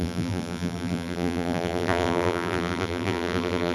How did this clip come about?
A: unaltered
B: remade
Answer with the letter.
B